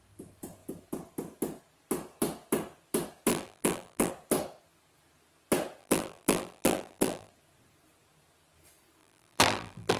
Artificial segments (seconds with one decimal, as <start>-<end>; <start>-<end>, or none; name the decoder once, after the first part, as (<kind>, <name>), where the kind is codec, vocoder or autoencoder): 3.3-4.1 (vocoder, BigVGAN v2); 5.8-7.3; 9.0-10.0